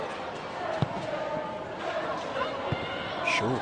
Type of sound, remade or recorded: recorded